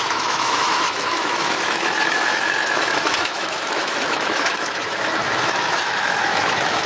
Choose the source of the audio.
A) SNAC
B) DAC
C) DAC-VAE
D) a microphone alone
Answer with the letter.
C